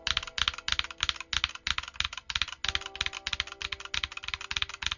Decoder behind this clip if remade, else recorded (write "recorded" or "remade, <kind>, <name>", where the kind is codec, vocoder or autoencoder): recorded